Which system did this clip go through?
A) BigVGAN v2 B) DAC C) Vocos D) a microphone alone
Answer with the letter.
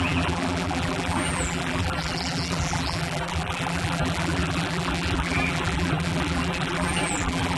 A